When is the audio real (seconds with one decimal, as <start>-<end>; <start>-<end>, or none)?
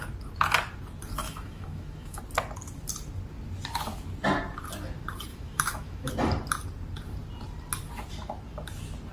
0.0-1.2; 2.2-5.3; 6.1-9.1